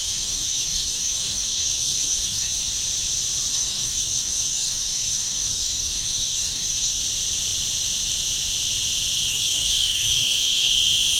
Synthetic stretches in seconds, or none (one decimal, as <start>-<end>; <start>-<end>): 0.0-2.7; 3.5-7.0; 9.3-10.7